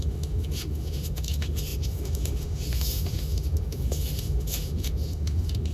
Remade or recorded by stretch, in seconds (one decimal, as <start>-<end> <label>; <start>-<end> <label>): 0.0-5.7 remade